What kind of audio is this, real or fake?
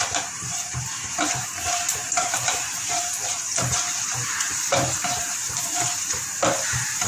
fake